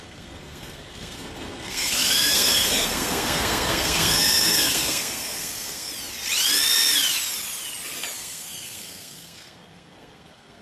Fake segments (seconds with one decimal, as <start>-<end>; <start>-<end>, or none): 0.0-5.9; 8.2-10.6